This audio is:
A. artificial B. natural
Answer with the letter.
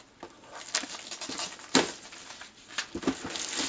B